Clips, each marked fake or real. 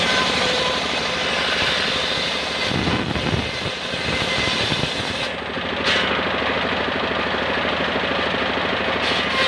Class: real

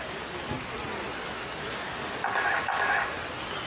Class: real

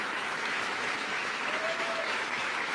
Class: fake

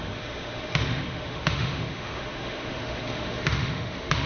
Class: fake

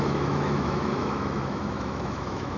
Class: fake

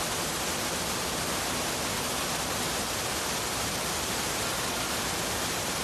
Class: real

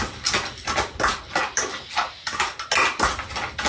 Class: real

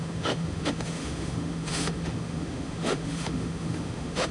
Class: fake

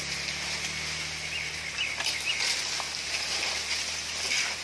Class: real